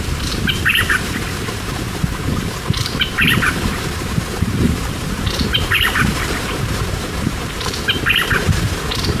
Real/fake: fake